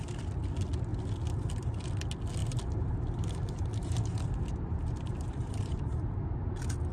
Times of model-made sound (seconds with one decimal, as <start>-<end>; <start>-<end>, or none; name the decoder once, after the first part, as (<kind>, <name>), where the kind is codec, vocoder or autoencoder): 2.4-6.5 (vocoder, BigVGAN v2)